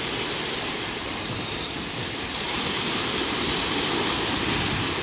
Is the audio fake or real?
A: real